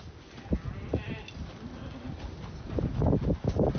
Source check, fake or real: real